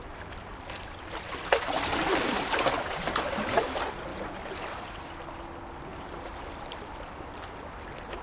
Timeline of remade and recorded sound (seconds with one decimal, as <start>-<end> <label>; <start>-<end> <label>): 0.0-2.1 recorded; 2.1-2.7 remade; 2.7-5.9 recorded; 5.9-7.2 remade; 7.2-8.2 recorded